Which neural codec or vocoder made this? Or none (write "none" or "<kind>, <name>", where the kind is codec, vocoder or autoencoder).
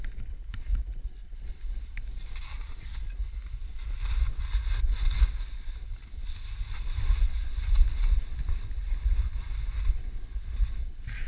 none